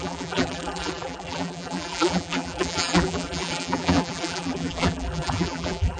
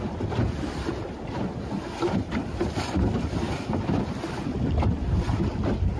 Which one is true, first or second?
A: second